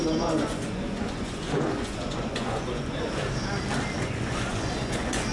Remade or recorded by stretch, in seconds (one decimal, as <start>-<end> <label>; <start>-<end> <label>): 0.0-3.2 remade; 3.2-4.0 recorded; 4.0-5.3 remade